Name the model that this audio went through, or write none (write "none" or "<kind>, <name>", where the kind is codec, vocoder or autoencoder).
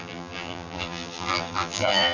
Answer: vocoder, BigVGAN v2